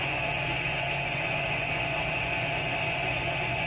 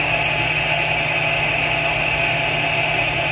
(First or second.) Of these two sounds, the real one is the second